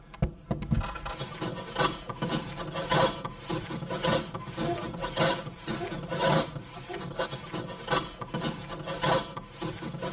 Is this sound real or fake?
real